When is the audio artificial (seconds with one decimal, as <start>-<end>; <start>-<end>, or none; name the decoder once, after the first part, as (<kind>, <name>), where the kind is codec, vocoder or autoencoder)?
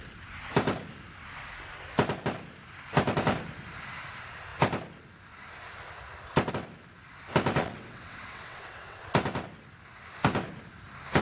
7.6-9.0 (vocoder, WaveNeXt)